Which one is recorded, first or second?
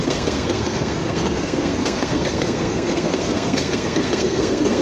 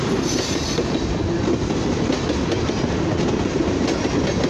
second